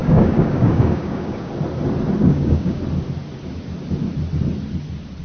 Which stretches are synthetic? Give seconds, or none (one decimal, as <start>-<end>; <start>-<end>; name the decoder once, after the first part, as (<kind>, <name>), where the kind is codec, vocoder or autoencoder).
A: 0.0-1.5 (codec, DAC); 2.2-2.8